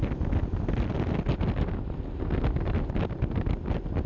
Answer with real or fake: real